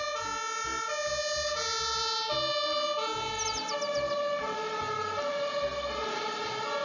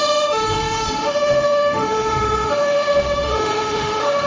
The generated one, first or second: second